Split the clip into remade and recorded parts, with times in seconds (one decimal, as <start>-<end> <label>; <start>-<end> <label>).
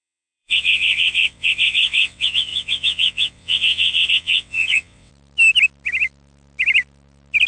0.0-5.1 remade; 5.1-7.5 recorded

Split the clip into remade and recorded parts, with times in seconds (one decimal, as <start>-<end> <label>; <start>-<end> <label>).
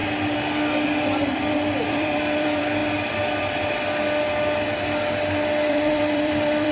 0.0-1.2 recorded; 1.2-2.8 remade; 2.8-5.7 recorded; 5.7-6.7 remade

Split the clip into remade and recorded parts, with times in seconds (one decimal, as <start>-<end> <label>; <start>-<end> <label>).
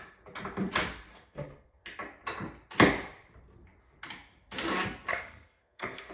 0.0-1.1 recorded; 1.1-1.8 remade; 1.8-5.1 recorded; 5.1-6.1 remade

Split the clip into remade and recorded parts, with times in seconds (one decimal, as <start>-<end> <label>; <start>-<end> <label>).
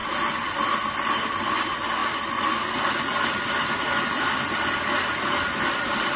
0.0-6.2 recorded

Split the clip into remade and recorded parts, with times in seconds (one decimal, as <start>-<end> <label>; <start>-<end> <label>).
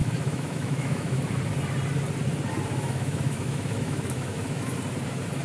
0.0-1.2 remade; 1.2-2.7 recorded; 2.7-4.7 remade; 4.7-5.4 recorded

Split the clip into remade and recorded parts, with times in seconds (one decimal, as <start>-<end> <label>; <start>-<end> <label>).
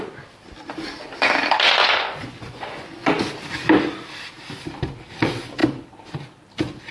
0.0-1.8 recorded; 1.8-3.1 remade; 3.1-6.9 recorded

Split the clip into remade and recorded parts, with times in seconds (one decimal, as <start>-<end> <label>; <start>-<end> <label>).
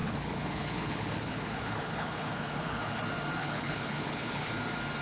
0.0-3.0 remade; 3.0-3.4 recorded; 3.4-4.5 remade; 4.5-5.0 recorded